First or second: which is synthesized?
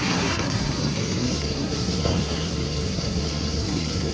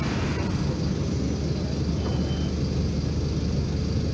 first